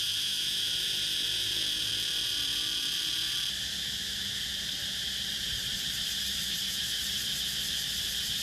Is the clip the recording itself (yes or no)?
no